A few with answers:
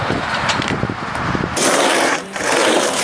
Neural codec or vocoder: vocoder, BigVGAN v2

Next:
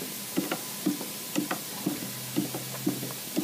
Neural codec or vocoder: none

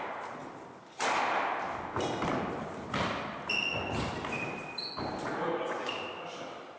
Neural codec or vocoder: none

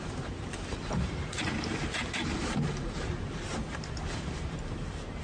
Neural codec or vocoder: vocoder, BigVGAN v2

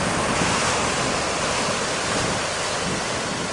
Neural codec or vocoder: none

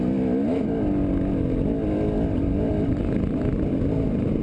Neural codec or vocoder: none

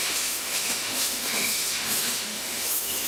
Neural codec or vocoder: autoencoder, DAC-VAE